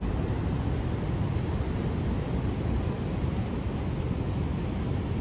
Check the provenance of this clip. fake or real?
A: real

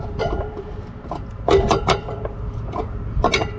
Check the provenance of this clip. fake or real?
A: real